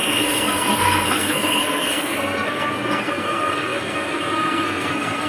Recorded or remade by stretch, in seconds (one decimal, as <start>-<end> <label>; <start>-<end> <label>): 0.0-5.3 remade